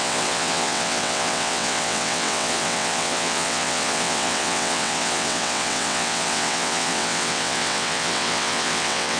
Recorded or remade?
remade